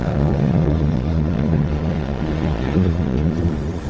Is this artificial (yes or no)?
yes